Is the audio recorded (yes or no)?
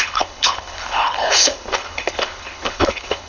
no